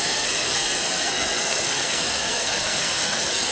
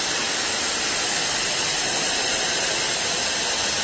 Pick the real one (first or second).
second